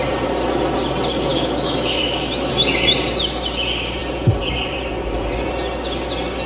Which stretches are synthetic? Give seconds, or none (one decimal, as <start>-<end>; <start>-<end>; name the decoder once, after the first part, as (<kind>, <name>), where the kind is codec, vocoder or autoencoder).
1.3-2.5 (autoencoder, DAC-VAE)